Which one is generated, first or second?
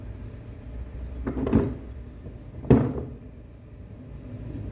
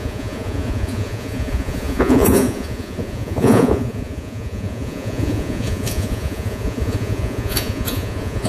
second